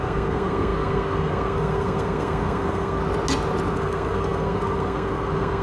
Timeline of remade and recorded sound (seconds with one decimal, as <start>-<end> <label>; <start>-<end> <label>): 0.0-3.0 remade; 3.0-3.7 recorded; 3.7-5.6 remade